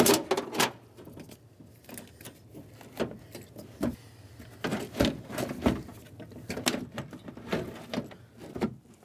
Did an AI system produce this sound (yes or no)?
no